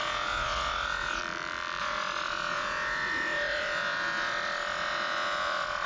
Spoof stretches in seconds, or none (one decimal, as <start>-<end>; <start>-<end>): 0.0-1.2; 1.8-5.9